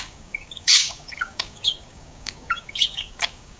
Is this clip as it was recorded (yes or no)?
no